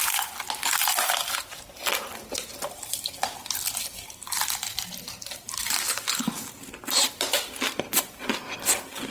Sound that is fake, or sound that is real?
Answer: real